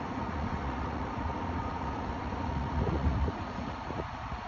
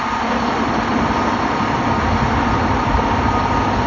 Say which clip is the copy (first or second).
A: first